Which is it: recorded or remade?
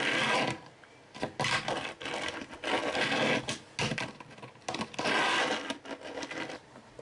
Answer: recorded